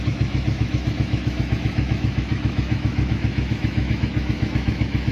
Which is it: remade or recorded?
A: remade